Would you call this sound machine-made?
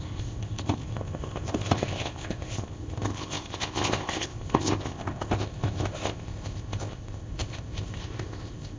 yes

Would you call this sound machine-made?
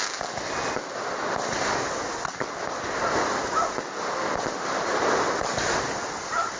no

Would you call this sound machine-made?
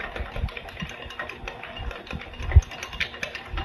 no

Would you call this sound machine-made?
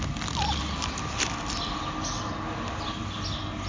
no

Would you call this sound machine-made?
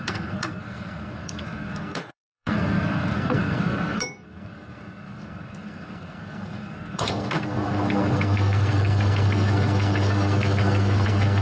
yes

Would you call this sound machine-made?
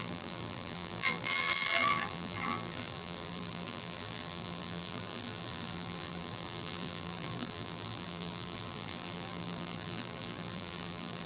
yes